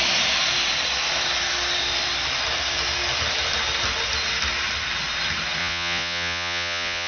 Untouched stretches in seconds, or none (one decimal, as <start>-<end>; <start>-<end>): 0.0-5.6